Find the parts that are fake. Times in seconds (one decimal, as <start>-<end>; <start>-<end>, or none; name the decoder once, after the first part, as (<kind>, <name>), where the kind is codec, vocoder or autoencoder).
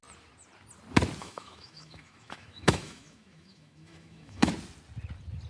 1.2-4.5 (autoencoder, DAC-VAE)